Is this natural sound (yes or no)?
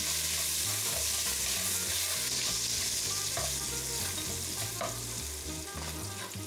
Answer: yes